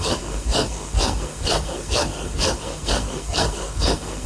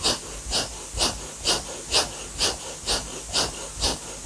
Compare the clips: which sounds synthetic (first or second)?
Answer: first